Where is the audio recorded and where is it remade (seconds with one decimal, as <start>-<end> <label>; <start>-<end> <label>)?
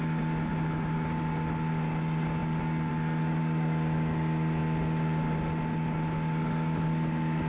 0.0-7.5 recorded